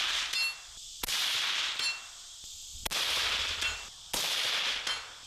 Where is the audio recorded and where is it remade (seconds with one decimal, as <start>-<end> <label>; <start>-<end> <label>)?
0.0-5.3 recorded